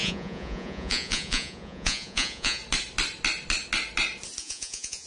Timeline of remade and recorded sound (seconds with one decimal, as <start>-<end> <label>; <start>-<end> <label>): 0.0-2.6 remade; 2.6-4.4 recorded; 4.4-5.1 remade